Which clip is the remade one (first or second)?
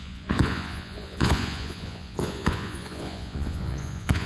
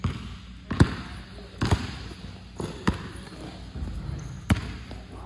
first